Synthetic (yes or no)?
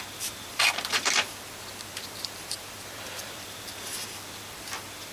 yes